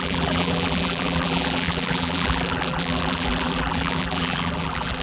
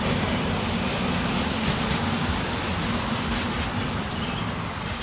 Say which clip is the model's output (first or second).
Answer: first